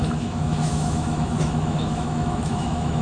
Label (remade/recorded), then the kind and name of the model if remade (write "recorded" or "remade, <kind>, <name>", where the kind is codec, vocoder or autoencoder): remade, autoencoder, DAC-VAE